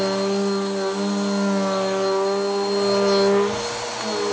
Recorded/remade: recorded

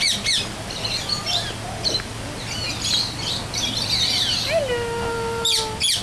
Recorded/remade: recorded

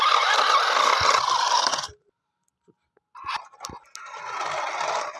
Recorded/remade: recorded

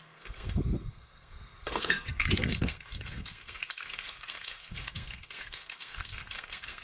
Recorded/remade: remade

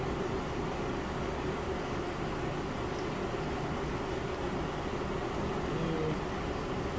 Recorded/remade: recorded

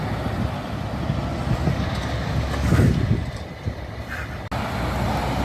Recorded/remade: recorded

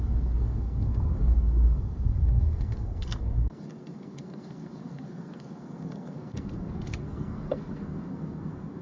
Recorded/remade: remade